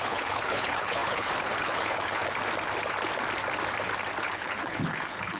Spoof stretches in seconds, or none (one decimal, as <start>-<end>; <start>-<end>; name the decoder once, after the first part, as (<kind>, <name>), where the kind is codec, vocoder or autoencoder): 0.0-2.2 (codec, HILCodec); 4.2-5.4